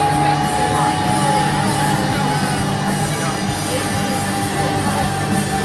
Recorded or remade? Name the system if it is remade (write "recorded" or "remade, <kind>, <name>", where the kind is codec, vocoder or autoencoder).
recorded